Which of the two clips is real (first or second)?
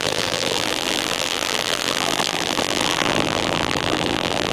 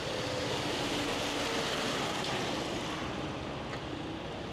second